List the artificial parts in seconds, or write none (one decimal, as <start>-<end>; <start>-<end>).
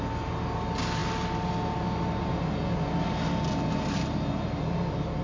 none